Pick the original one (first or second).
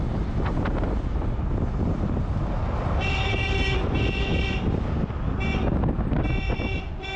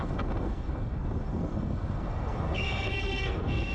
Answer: first